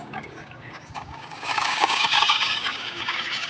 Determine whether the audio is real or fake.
fake